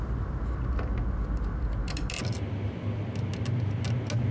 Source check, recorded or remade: recorded